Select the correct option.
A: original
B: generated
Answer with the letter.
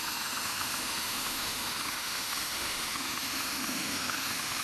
B